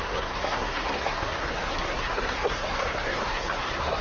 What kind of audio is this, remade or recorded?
remade